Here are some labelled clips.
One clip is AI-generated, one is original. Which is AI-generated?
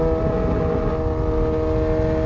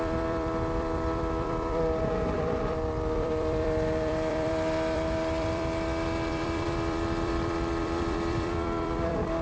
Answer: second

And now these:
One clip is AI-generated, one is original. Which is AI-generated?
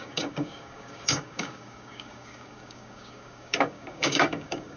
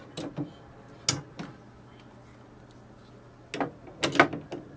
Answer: first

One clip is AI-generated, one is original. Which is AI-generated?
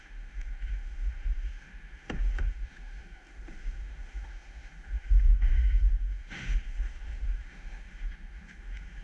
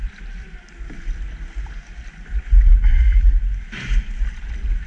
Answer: first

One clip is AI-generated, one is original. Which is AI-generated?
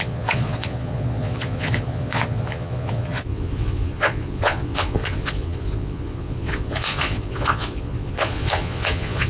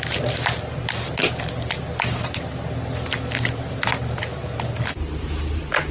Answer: first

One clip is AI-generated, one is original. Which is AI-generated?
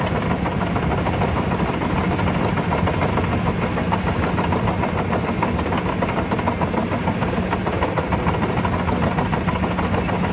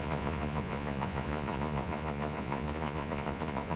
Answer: second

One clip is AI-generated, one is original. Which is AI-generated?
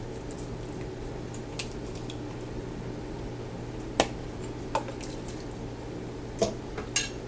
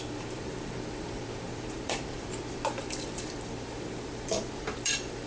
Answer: second